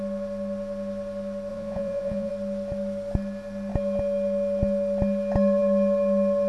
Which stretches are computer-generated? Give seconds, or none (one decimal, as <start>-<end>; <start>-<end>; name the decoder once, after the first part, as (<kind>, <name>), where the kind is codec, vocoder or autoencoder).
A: 1.5-2.3 (vocoder, Vocos)